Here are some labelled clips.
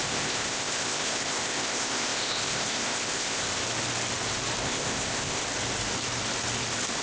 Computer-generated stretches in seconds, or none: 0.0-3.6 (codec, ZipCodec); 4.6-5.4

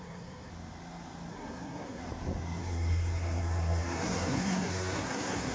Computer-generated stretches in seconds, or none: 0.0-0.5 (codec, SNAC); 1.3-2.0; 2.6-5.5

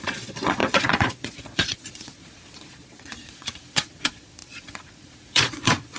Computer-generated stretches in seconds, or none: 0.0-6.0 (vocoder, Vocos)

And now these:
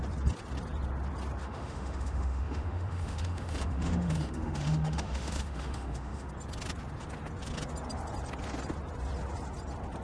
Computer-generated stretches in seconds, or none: 1.4-6.3 (autoencoder, DAC-VAE)

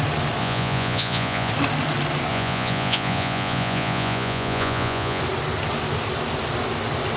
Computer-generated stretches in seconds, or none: 0.4-1.5 (vocoder, Vocos); 2.3-5.2

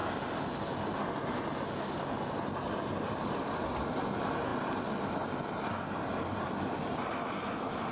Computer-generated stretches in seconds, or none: none

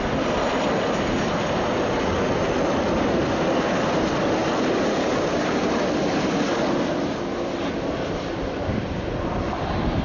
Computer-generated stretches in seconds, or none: none

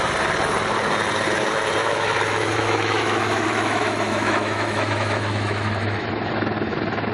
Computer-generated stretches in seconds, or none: 1.8-6.1 (autoencoder, DAC-VAE)